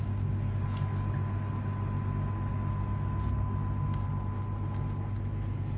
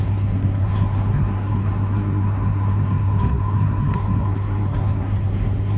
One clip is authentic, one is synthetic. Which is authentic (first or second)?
first